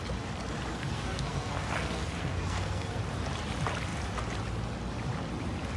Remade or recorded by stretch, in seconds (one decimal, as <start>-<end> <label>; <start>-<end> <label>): 0.0-0.7 recorded; 0.7-3.0 remade; 3.0-5.8 recorded

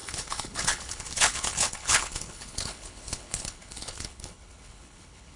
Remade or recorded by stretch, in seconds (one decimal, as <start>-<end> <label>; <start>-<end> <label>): 0.0-5.4 remade

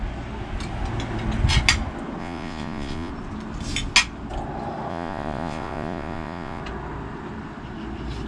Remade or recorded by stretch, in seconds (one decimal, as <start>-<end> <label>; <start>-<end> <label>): 0.0-2.2 recorded; 2.2-3.1 remade; 3.1-4.9 recorded; 4.9-6.6 remade; 6.6-8.3 recorded

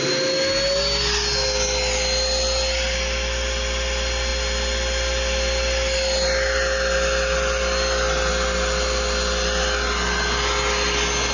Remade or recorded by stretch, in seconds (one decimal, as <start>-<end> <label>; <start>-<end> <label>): 0.0-11.3 recorded

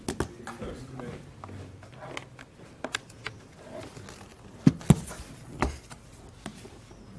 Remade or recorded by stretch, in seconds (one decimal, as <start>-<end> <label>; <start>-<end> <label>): 0.0-7.2 recorded

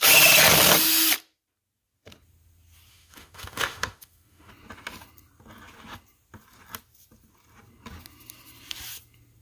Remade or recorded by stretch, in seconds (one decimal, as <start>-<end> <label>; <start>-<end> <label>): 0.0-2.9 recorded; 2.9-4.5 remade; 4.5-9.4 recorded